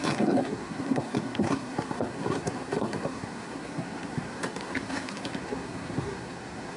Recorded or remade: remade